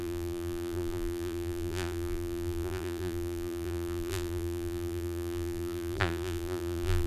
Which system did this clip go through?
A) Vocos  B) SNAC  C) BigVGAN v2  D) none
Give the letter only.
C